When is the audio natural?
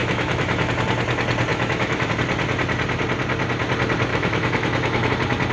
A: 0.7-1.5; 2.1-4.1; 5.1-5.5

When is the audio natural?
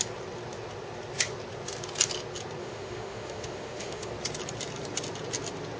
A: 0.0-2.6; 4.1-5.8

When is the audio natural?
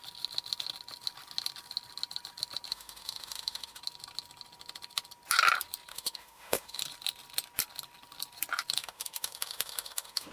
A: 0.0-2.7; 3.8-5.9; 6.8-8.8